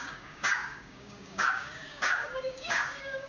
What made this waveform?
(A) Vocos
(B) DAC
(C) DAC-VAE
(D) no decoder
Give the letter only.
B